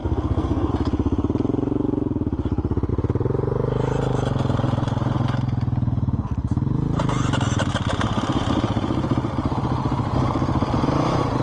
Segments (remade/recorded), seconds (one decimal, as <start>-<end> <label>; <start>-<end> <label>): 0.0-0.7 remade; 0.7-11.4 recorded